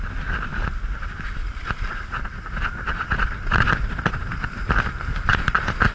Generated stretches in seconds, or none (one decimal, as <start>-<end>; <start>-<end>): none